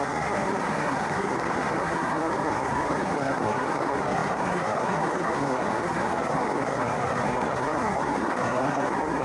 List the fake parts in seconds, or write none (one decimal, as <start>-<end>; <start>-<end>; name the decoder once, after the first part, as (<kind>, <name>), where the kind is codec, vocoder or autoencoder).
0.0-9.2 (codec, SNAC)